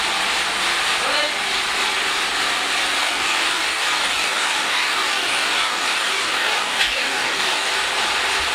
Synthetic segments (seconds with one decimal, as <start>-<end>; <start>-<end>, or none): 3.0-7.7

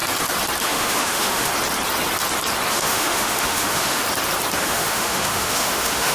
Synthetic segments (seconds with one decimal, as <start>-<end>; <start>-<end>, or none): 0.6-1.5; 2.7-4.0; 4.6-6.1

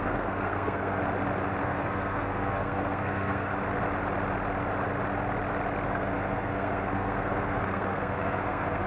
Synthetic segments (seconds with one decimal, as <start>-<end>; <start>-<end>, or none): 0.0-1.0; 1.6-3.5; 5.9-8.9

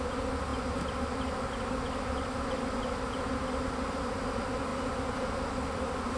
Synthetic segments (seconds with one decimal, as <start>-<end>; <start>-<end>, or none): none

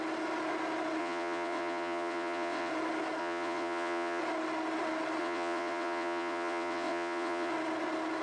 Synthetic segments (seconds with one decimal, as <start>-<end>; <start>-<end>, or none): 1.0-2.7; 3.2-4.2; 5.2-7.5

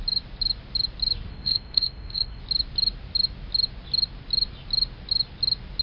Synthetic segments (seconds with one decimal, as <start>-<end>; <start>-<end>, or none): 1.3-2.4